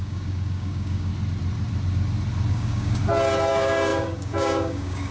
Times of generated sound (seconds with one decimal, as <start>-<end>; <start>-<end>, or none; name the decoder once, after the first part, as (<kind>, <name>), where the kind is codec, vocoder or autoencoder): 0.0-1.1 (codec, DAC); 2.5-3.0; 3.5-5.1